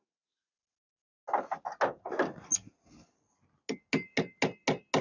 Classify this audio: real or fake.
real